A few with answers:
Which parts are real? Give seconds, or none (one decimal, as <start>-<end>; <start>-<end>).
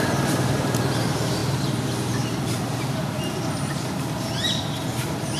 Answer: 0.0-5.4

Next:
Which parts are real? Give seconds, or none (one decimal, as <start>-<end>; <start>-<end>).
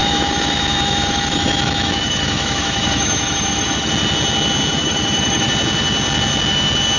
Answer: 3.9-4.7; 5.5-7.0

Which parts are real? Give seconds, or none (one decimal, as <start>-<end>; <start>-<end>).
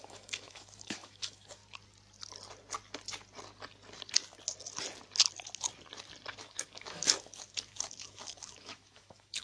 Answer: 1.6-6.4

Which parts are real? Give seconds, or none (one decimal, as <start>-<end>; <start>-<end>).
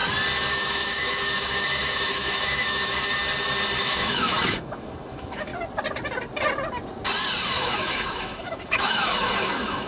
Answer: 0.0-0.5; 3.2-3.8; 5.5-7.6